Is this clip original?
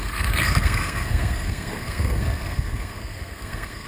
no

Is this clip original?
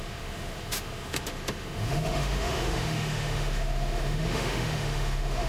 no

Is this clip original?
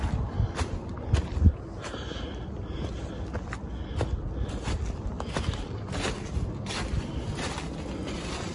yes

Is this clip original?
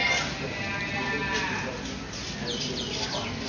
yes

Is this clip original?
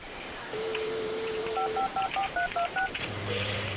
no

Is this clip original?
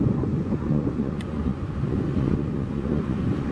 no